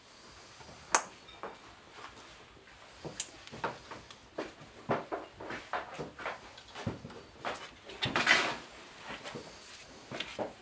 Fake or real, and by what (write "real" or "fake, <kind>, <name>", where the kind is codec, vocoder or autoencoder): real